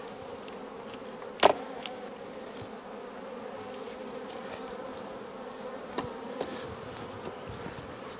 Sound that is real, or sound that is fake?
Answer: real